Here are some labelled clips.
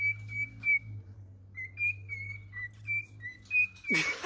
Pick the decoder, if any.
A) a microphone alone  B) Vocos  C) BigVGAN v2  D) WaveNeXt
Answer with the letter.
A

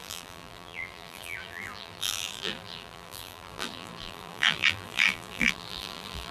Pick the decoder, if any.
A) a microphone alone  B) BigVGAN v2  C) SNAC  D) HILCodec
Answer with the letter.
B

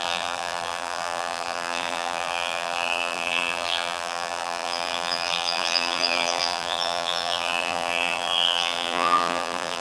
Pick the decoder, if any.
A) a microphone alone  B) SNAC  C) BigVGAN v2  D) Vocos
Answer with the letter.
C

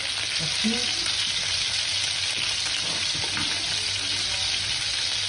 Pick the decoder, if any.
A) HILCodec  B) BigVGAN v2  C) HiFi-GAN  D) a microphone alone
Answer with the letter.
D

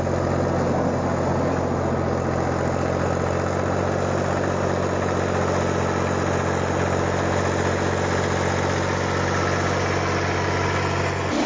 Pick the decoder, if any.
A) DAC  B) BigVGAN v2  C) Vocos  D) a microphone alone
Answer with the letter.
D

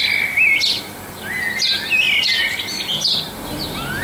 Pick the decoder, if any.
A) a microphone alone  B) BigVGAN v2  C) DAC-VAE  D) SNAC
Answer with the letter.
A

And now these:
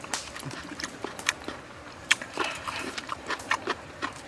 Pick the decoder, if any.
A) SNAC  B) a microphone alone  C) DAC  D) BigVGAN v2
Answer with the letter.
D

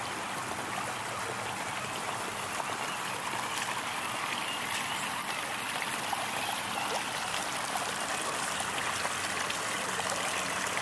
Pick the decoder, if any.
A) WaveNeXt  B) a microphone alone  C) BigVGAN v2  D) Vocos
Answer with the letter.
B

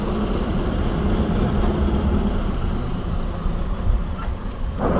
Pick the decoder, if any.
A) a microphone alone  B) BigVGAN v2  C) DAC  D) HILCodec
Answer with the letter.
B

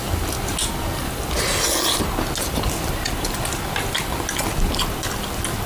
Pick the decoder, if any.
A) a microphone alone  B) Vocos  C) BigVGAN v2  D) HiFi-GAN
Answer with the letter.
A